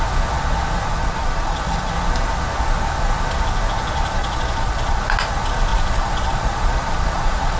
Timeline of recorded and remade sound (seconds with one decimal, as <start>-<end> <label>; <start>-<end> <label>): 0.0-0.9 recorded; 0.9-1.9 remade; 1.9-4.2 recorded; 4.2-5.0 remade; 5.0-5.7 recorded; 5.7-7.6 remade